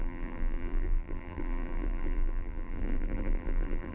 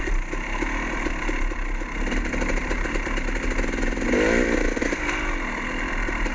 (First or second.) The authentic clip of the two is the second